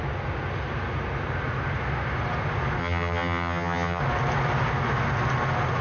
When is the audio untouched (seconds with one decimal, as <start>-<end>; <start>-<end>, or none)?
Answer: 0.0-2.8; 4.0-5.8